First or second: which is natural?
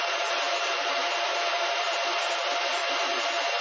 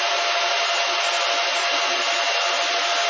second